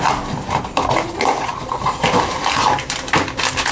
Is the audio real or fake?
fake